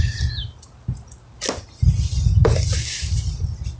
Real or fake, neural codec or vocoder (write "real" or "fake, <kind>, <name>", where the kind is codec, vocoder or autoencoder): real